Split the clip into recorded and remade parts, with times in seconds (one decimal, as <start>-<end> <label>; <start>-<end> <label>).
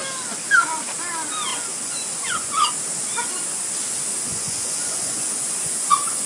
0.0-1.5 recorded; 1.5-2.7 remade; 2.7-4.3 recorded; 4.3-6.3 remade